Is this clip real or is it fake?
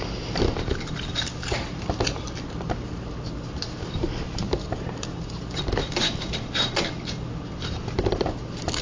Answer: fake